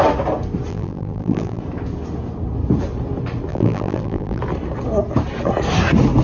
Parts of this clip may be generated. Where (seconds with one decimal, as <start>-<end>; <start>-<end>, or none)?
0.7-1.6; 3.5-4.4